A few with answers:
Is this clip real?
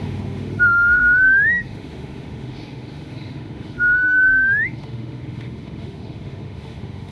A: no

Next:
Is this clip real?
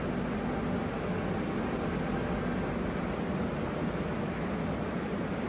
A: yes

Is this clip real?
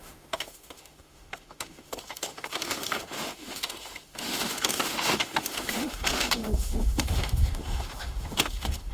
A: no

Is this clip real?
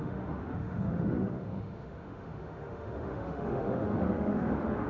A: no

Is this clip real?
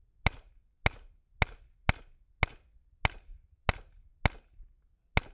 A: yes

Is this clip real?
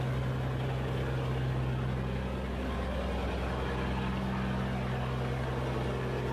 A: yes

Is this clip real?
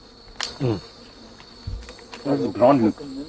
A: yes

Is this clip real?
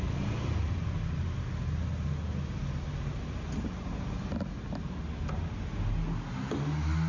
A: yes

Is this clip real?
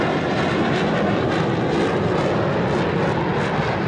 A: yes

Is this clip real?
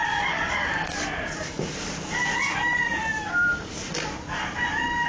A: yes